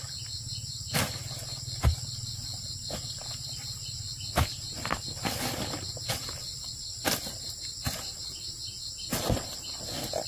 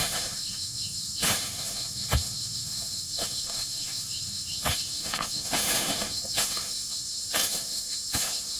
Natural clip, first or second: first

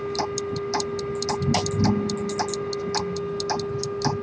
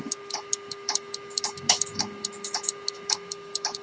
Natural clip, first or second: first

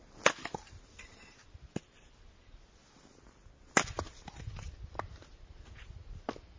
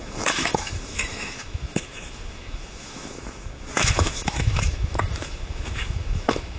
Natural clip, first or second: first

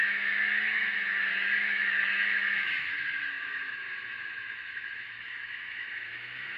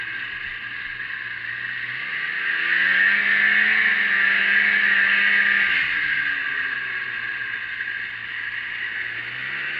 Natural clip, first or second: second